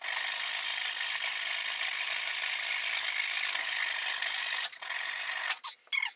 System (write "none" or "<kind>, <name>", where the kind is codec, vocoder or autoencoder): none